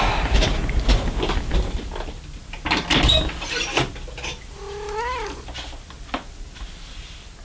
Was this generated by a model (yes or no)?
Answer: no